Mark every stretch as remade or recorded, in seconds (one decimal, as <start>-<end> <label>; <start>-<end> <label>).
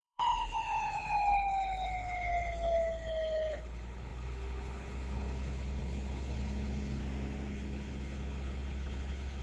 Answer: 0.0-7.0 remade; 7.0-7.5 recorded; 7.5-9.4 remade